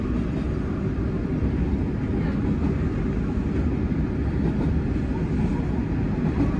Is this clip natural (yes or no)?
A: yes